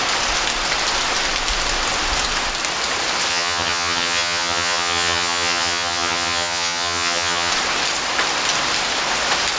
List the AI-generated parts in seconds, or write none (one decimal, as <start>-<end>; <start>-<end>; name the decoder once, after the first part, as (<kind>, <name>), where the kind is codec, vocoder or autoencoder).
3.3-7.5 (vocoder, HiFi-GAN)